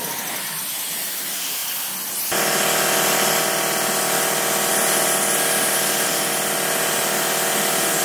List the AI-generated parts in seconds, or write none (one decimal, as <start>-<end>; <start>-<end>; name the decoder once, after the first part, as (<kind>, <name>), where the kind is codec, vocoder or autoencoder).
none